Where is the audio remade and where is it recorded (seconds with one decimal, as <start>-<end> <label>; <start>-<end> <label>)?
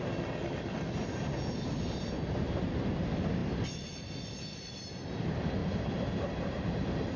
0.0-5.6 recorded; 5.6-6.6 remade; 6.6-7.2 recorded